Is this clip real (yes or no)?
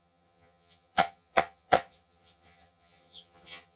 no